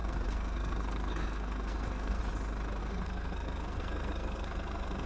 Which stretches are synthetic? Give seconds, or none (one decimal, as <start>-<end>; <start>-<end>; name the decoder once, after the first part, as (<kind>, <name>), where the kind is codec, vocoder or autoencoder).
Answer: 0.0-2.2 (codec, SNAC); 2.8-5.1